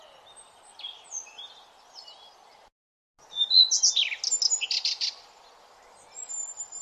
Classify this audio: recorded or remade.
recorded